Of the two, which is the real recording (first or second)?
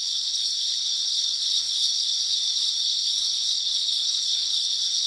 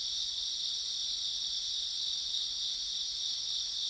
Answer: second